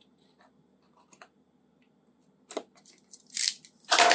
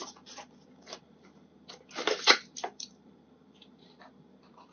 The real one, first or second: first